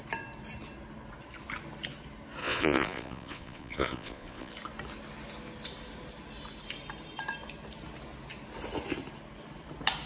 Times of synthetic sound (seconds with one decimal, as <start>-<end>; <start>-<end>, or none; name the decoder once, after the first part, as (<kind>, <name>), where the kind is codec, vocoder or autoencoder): 2.4-4.5 (vocoder, Vocos)